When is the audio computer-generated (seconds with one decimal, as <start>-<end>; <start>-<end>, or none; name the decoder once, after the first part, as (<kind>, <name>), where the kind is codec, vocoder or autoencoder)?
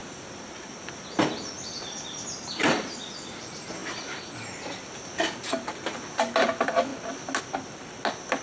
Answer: 0.0-1.5 (vocoder, BigVGAN v2); 3.8-4.3